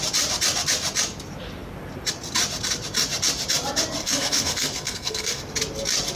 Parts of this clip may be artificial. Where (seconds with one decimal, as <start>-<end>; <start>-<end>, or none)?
4.0-5.4